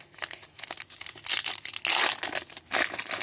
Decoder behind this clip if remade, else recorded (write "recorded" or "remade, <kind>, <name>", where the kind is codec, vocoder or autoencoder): recorded